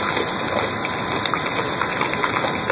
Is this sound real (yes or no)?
yes